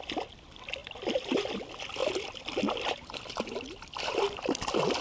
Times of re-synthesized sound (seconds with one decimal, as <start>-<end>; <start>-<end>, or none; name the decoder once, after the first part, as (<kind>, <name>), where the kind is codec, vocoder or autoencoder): 0.8-1.6 (vocoder, BigVGAN v2); 2.0-5.0